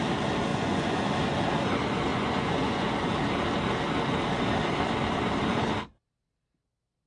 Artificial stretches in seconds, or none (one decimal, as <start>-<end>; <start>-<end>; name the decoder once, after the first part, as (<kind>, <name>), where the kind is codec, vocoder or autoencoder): 0.5-1.0 (vocoder, Vocos); 2.1-3.1